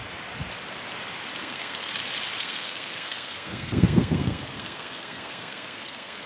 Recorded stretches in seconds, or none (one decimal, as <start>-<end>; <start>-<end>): 0.0-1.4; 1.9-2.4